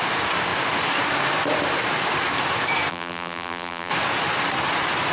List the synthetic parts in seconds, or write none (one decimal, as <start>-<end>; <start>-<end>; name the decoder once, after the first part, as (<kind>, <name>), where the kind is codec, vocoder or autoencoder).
2.9-3.9 (vocoder, BigVGAN v2)